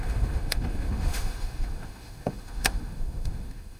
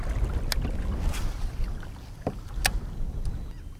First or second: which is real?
second